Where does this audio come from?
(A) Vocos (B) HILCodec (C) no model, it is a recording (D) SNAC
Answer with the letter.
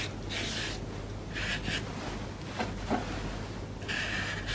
C